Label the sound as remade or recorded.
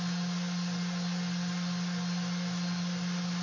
recorded